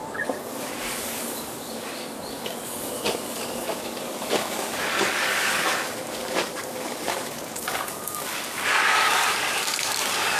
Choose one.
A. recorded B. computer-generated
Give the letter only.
B